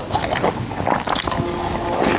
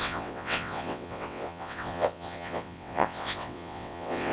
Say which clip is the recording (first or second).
first